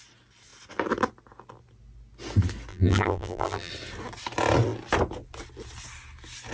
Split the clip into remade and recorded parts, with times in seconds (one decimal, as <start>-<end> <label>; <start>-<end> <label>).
0.0-2.7 recorded; 2.7-3.7 remade; 3.7-6.5 recorded